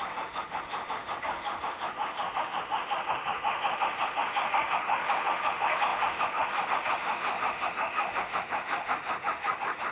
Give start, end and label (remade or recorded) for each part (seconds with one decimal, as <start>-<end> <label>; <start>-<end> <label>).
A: 0.0-9.9 remade